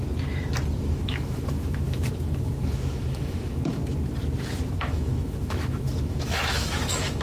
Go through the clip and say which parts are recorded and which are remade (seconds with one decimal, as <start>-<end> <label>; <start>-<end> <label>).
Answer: 0.0-0.8 recorded; 0.8-3.8 remade; 3.8-4.7 recorded; 4.7-7.2 remade